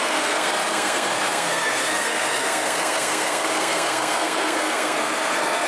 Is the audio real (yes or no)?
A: no